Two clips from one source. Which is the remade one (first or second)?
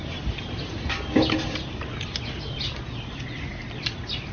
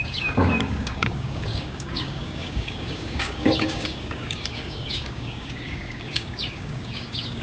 second